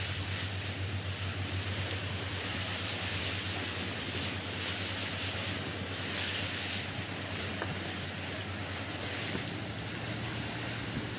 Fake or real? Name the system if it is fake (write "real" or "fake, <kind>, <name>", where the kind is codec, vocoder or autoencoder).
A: real